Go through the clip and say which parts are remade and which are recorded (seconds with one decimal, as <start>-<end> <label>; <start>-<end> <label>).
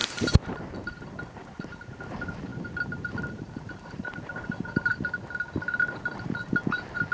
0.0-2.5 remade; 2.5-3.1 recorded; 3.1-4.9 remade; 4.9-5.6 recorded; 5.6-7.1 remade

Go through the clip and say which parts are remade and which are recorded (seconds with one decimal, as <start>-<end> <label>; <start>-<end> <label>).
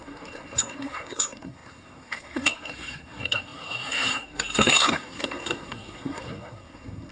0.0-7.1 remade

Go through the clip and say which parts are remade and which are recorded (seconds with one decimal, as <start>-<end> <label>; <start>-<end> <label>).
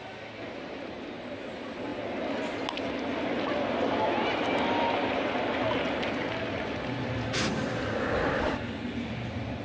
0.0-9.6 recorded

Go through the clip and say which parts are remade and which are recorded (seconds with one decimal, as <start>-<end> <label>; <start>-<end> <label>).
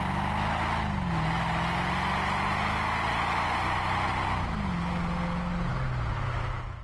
0.0-6.8 recorded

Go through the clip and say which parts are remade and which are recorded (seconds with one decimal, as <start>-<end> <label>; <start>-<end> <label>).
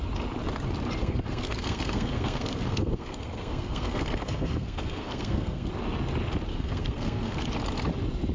0.0-1.0 recorded; 1.0-5.7 remade; 5.7-6.5 recorded; 6.5-7.4 remade; 7.4-8.3 recorded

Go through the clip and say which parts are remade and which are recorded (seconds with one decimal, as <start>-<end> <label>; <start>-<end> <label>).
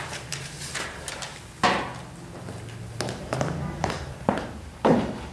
0.0-1.3 remade; 1.3-3.2 recorded; 3.2-5.3 remade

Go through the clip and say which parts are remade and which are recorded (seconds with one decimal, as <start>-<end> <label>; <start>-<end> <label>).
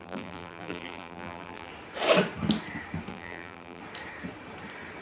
0.0-1.7 remade; 1.7-3.1 recorded; 3.1-3.8 remade; 3.8-5.0 recorded